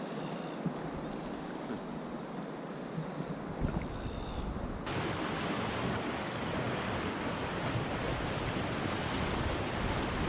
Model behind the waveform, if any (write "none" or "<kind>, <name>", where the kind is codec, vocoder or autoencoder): none